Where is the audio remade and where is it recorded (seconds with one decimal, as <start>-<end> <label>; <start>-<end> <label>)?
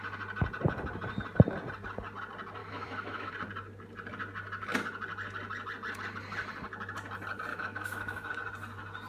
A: 0.0-2.6 recorded; 2.6-3.3 remade; 3.3-7.5 recorded; 7.5-8.3 remade; 8.3-9.1 recorded